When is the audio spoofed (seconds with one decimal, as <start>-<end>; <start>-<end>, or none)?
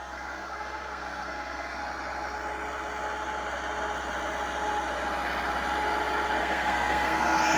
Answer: 0.0-1.8; 6.4-7.6